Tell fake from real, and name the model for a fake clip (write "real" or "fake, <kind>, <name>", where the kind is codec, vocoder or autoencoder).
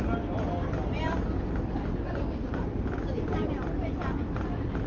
real